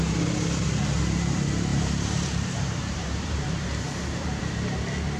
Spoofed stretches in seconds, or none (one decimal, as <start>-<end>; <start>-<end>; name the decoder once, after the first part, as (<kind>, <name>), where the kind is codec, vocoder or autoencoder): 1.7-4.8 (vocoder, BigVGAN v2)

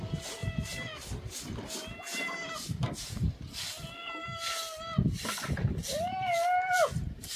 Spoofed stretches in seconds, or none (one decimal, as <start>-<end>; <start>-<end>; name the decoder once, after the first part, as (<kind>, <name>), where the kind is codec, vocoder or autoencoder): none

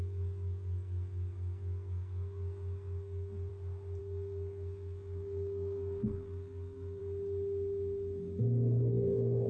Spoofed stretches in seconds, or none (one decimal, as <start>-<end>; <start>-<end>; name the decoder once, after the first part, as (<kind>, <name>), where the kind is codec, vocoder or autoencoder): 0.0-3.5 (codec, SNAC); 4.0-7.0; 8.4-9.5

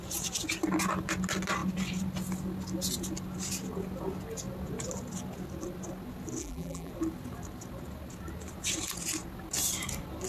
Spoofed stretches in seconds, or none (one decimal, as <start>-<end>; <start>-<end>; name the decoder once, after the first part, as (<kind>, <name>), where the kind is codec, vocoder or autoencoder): 6.4-6.9 (vocoder, BigVGAN v2)

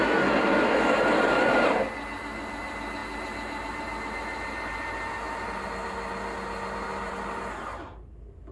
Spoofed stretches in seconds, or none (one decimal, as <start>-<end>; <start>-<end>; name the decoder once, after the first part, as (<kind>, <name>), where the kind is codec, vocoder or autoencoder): none